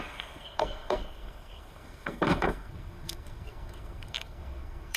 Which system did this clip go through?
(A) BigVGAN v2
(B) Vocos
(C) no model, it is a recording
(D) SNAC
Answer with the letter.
D